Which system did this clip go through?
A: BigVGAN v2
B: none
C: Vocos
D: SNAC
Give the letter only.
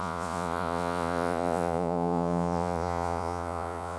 C